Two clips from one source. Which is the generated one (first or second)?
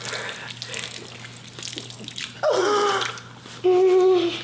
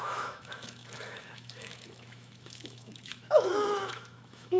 second